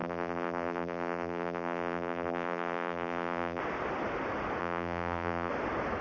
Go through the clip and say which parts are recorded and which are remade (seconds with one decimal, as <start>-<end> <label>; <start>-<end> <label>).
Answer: 0.0-3.6 remade; 3.6-4.6 recorded; 4.6-5.5 remade; 5.5-6.0 recorded